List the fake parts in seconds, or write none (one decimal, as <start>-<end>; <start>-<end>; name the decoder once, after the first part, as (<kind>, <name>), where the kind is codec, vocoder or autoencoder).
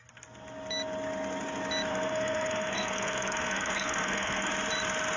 1.9-4.5 (codec, SNAC)